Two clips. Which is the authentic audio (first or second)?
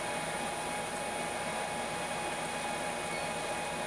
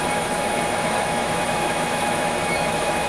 first